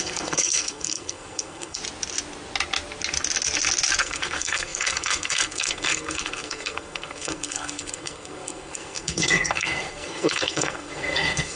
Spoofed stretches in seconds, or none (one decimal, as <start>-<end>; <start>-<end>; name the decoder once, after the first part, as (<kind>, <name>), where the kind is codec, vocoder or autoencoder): 0.0-1.8 (codec, SNAC); 4.0-11.6